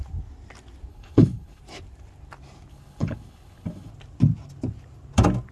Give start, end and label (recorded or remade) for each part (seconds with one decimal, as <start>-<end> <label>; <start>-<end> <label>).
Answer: 0.0-0.9 recorded; 0.9-1.6 remade; 1.6-2.7 recorded; 2.7-3.9 remade; 3.9-5.5 recorded